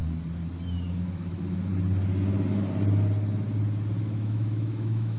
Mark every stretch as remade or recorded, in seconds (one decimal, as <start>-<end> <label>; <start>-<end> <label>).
0.0-1.0 recorded; 1.0-1.7 remade; 1.7-4.0 recorded; 4.0-5.2 remade